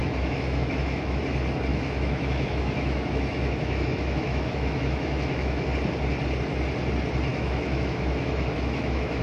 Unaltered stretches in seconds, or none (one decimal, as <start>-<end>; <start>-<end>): 1.2-1.7; 5.7-7.3